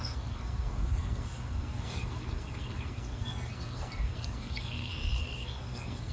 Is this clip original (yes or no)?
no